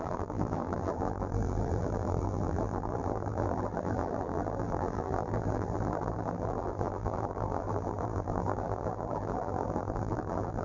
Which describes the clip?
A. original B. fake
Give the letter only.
B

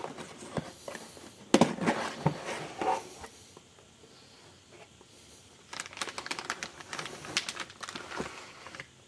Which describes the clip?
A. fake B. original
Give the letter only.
B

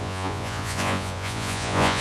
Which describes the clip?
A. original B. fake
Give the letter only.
B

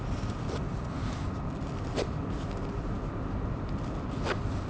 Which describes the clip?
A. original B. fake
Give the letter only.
B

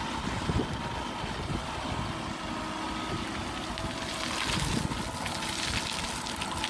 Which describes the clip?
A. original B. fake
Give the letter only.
A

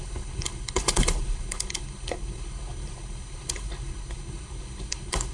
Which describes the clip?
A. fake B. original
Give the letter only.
A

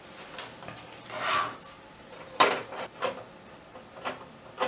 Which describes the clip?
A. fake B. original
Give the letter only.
B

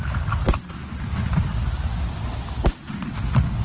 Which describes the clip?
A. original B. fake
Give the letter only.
A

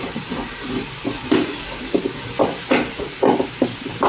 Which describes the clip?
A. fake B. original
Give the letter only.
A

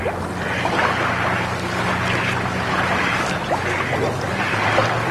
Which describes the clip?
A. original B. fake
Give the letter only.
A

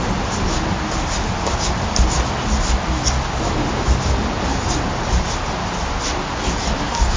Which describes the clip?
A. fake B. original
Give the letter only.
B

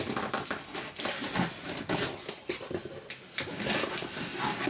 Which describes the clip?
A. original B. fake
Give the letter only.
A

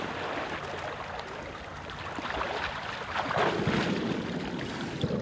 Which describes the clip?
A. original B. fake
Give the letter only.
A